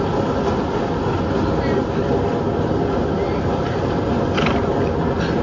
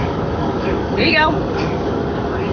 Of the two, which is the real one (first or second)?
first